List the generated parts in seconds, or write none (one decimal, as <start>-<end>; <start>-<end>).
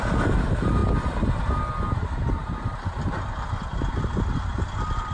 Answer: none